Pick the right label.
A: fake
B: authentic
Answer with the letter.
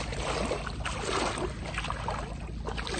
B